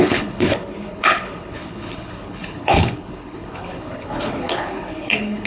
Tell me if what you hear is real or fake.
fake